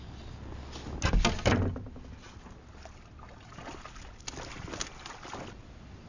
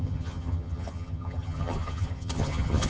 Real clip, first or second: first